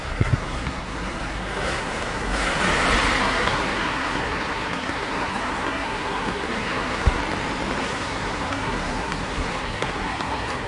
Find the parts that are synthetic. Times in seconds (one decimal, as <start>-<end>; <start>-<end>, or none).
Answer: 0.0-2.6; 3.2-7.2; 7.8-10.7